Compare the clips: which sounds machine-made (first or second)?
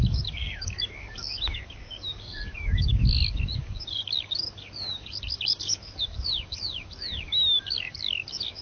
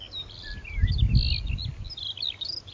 first